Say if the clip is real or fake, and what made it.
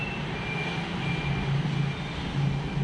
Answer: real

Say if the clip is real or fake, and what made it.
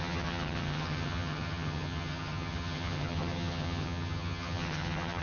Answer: fake, vocoder, HiFi-GAN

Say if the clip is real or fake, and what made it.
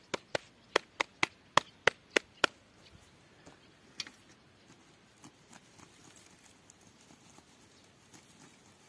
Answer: real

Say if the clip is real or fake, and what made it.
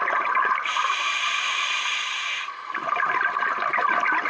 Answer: real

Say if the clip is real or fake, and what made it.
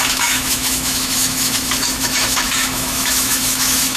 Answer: fake, autoencoder, DAC-VAE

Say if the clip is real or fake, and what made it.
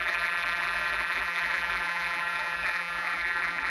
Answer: fake, vocoder, BigVGAN v2